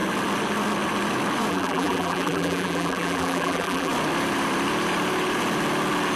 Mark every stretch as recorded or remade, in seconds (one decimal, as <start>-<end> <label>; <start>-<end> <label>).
0.0-1.5 recorded; 1.5-3.9 remade; 3.9-6.2 recorded